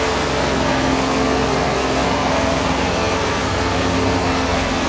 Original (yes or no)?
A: no